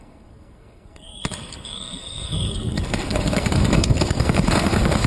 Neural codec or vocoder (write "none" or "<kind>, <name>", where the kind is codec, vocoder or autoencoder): codec, SNAC